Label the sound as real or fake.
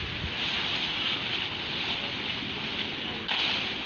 real